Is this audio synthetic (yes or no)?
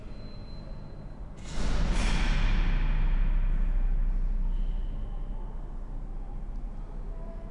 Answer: no